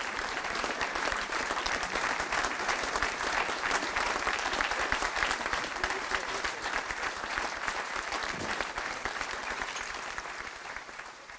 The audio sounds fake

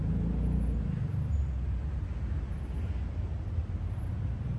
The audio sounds real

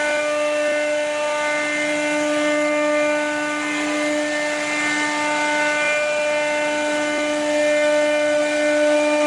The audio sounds real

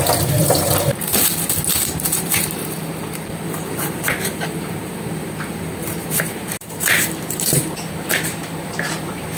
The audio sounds fake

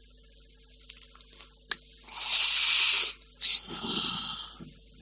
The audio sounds real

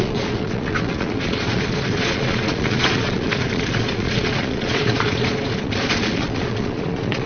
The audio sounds fake